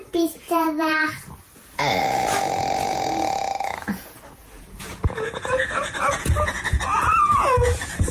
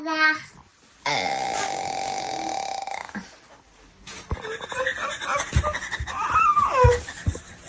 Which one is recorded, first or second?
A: second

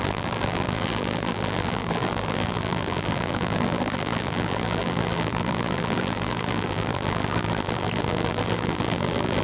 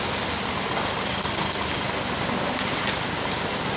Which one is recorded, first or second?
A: second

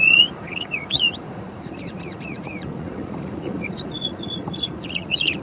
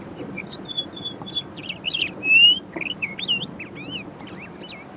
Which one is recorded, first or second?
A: second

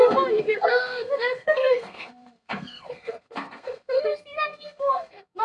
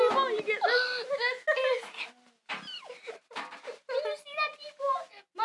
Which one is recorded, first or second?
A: second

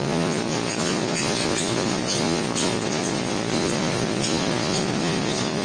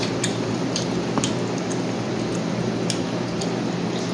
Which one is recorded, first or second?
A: second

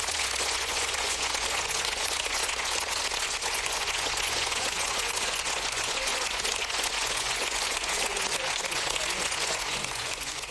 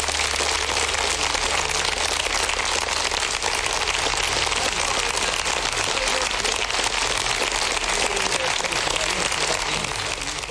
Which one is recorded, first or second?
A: second